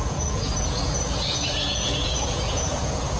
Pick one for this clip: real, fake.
fake